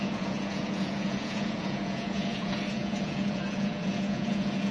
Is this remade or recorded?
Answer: remade